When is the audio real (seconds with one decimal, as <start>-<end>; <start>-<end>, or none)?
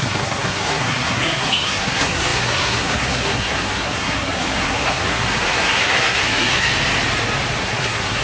6.7-7.6